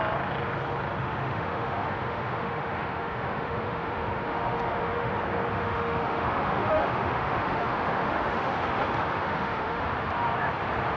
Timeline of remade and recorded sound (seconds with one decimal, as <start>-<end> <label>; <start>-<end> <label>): 0.0-1.0 recorded; 1.0-5.1 remade; 5.1-5.5 recorded; 5.5-9.8 remade; 9.8-11.0 recorded